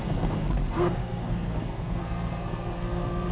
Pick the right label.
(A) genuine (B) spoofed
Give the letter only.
B